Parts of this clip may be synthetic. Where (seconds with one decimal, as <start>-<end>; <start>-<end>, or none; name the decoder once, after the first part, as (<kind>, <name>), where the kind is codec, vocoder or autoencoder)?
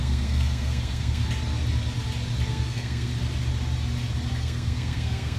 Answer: 0.0-1.2 (codec, SNAC); 2.5-3.1; 4.4-5.4